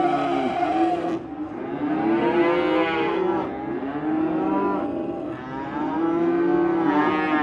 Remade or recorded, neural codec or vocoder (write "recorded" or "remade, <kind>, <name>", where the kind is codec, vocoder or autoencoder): recorded